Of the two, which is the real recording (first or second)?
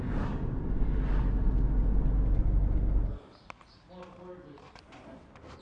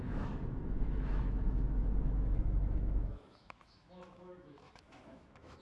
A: first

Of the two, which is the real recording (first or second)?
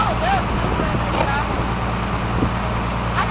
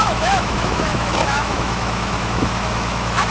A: first